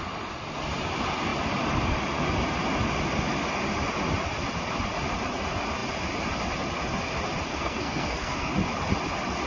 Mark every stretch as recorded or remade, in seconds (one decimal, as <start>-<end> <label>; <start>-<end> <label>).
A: 0.0-7.5 recorded; 7.5-8.5 remade; 8.5-9.5 recorded